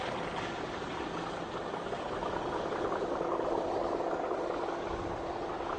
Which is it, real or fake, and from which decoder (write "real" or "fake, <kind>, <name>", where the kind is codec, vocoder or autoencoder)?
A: real